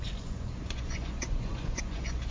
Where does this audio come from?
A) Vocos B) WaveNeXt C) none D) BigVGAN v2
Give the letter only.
A